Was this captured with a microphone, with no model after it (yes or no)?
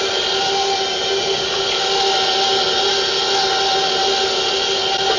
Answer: yes